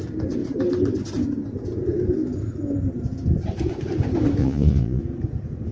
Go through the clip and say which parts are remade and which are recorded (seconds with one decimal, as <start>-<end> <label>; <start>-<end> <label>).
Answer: 0.0-4.4 recorded; 4.4-5.0 remade; 5.0-5.7 recorded

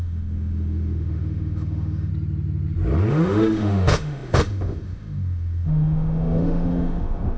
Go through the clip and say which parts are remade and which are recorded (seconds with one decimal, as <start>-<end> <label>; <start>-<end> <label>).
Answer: 0.0-2.1 remade; 2.1-3.1 recorded; 3.1-7.4 remade